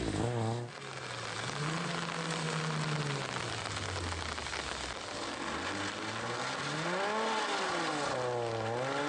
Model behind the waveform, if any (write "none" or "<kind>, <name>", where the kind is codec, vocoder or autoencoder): none